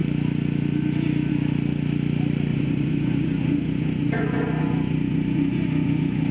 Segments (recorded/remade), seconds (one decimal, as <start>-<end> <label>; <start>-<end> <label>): 0.0-2.5 recorded; 2.5-6.3 remade